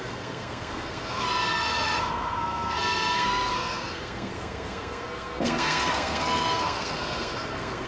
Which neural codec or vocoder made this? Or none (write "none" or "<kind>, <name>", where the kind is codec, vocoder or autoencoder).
codec, SNAC